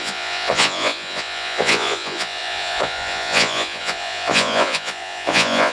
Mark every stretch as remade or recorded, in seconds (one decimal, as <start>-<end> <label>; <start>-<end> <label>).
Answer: 0.0-5.7 remade